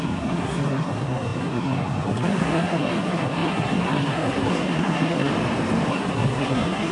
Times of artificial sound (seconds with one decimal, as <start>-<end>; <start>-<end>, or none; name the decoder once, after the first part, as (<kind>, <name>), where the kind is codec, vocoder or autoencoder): 0.0-5.3 (codec, SNAC); 5.9-6.9